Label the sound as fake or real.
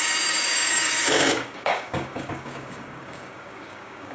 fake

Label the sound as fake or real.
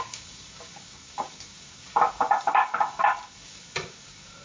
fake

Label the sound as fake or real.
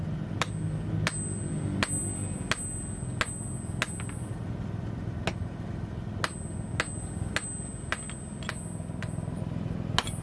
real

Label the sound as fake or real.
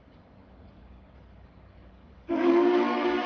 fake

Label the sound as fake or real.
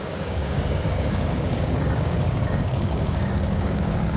fake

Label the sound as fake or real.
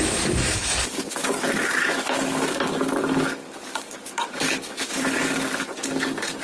fake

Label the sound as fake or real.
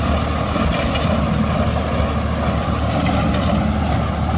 real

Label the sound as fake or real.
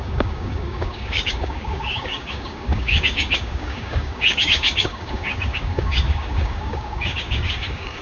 fake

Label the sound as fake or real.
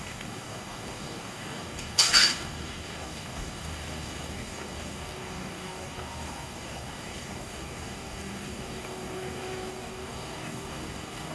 fake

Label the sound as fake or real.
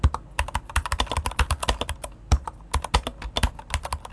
real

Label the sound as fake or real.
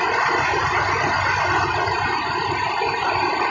real